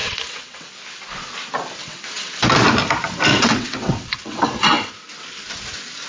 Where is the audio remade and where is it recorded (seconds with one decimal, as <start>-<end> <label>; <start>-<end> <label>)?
0.0-0.7 remade; 0.7-1.8 recorded; 1.8-2.4 remade; 2.4-3.3 recorded; 3.3-4.9 remade; 4.9-6.1 recorded